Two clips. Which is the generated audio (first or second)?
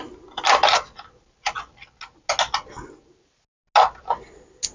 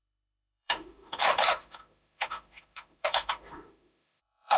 second